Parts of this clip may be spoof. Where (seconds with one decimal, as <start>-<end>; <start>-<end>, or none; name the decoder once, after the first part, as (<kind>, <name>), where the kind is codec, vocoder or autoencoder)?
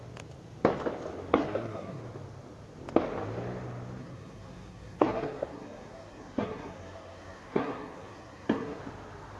1.3-2.0 (codec, SNAC); 4.0-8.8